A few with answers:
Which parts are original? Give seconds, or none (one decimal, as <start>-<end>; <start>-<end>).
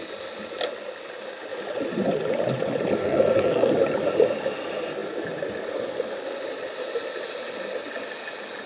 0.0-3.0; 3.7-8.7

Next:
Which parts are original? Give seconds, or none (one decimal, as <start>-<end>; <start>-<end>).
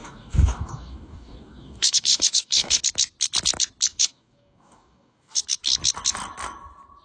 2.8-3.9; 5.4-7.0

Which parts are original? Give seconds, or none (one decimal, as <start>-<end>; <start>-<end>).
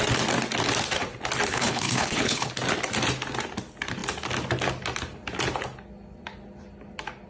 0.0-1.5; 2.5-7.3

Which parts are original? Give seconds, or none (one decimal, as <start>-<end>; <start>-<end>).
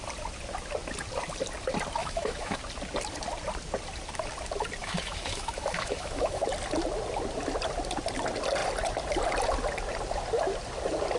0.0-2.0; 2.6-4.8; 6.4-11.2